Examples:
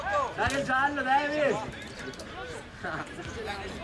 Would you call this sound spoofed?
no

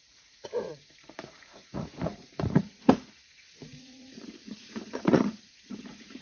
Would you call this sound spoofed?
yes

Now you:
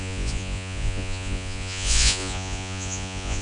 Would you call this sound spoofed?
yes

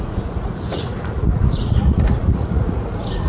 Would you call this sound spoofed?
yes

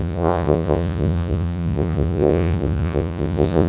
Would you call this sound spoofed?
yes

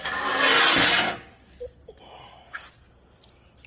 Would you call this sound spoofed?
no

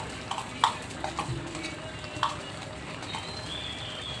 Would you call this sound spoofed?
no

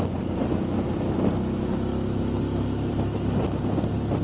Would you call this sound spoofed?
no